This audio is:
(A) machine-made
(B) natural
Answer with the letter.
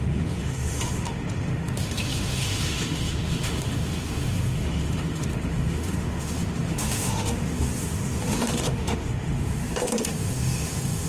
A